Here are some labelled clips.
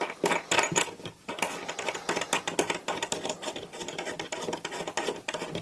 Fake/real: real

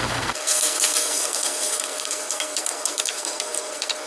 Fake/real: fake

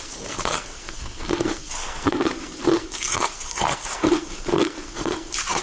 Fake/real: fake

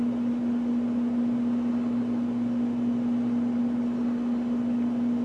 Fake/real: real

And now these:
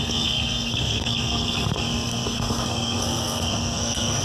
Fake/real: fake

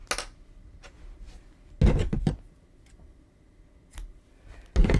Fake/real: real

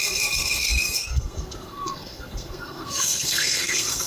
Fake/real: fake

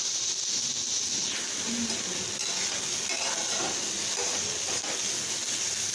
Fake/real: real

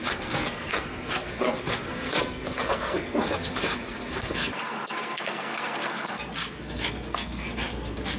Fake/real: fake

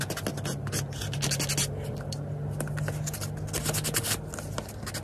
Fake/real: real